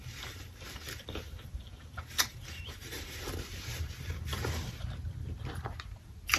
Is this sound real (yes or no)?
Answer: no